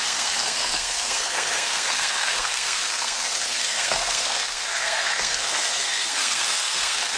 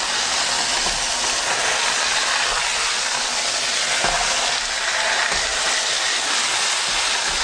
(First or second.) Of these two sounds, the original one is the second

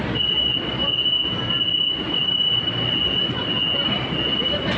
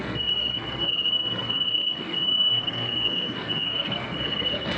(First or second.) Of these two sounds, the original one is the first